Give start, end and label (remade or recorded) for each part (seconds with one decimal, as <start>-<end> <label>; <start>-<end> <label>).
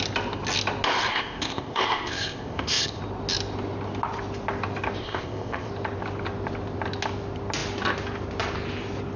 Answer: 0.0-1.1 recorded; 1.1-3.0 remade; 3.0-5.0 recorded; 5.0-5.7 remade; 5.7-9.2 recorded